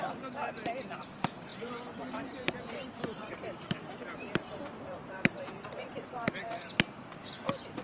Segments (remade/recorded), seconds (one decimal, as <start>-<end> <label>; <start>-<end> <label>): 0.0-1.5 recorded; 1.5-2.6 remade; 2.6-3.2 recorded; 3.2-6.7 remade; 6.7-7.8 recorded